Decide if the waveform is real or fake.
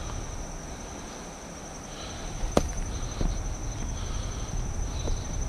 real